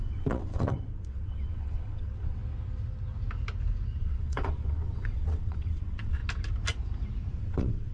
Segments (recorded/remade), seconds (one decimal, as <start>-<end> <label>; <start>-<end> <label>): 0.0-2.4 remade; 2.4-4.0 recorded; 4.0-6.2 remade; 6.2-7.3 recorded; 7.3-7.9 remade